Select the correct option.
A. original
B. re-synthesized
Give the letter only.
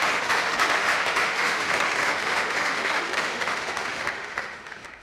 B